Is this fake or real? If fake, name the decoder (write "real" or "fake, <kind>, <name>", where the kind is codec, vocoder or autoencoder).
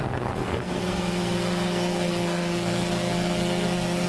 fake, codec, SNAC